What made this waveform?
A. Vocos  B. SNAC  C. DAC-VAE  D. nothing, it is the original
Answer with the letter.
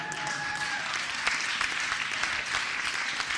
D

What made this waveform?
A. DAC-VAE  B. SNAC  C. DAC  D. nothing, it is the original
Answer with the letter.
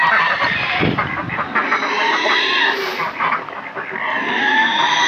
D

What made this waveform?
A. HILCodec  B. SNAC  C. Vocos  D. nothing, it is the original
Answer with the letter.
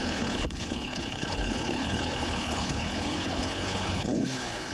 A